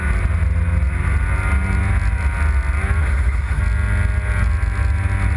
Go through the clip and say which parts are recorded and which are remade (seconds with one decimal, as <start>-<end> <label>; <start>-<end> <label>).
0.0-3.0 recorded; 3.0-3.6 remade; 3.6-5.4 recorded